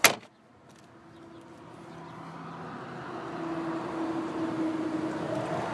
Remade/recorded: recorded